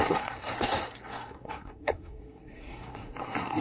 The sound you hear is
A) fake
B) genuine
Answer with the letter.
A